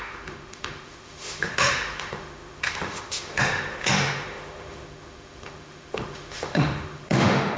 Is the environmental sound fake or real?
fake